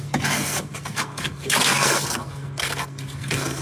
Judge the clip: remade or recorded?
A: remade